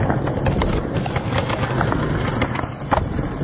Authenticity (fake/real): real